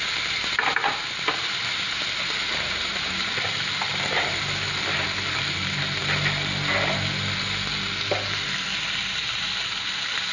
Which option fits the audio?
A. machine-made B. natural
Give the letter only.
B